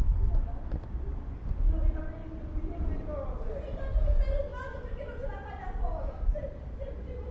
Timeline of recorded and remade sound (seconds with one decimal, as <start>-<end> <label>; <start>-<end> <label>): 0.0-7.3 recorded